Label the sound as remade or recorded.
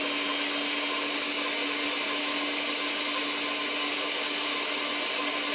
recorded